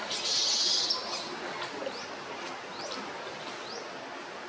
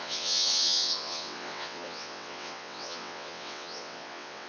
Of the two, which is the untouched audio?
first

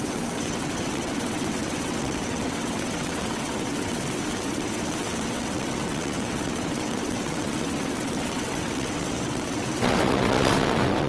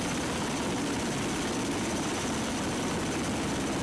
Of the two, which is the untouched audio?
second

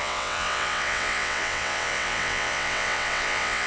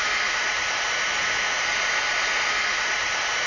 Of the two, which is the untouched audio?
second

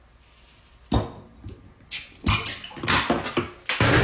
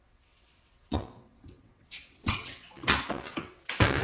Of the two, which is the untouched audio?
first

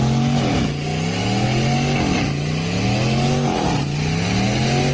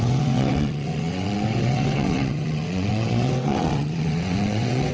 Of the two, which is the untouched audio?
first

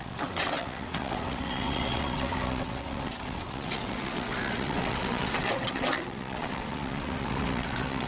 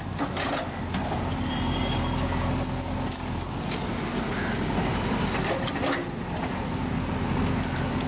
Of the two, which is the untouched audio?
second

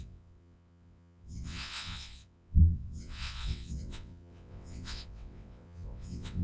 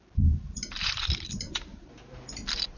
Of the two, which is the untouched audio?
second